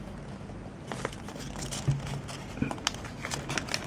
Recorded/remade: recorded